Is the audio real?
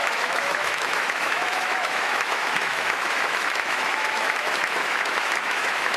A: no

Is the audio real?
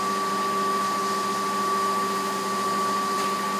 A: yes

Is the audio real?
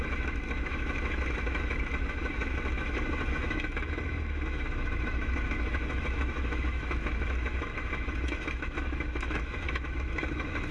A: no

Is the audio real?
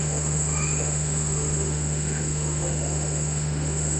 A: no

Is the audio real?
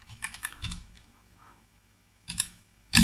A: no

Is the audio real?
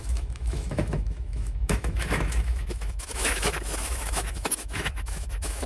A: no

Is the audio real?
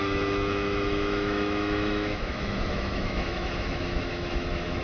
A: no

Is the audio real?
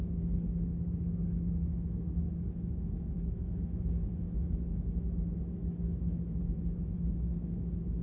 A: no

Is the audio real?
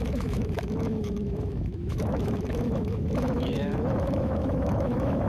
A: no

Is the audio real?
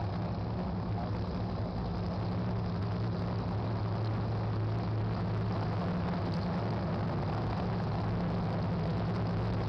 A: yes